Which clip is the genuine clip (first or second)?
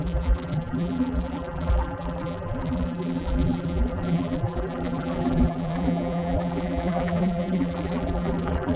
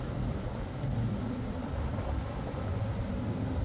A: second